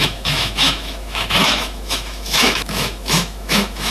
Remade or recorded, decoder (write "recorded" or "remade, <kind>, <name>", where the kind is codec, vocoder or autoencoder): remade, autoencoder, DAC-VAE